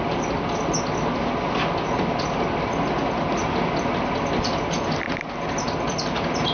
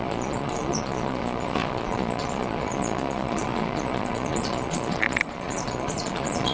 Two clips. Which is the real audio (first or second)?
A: first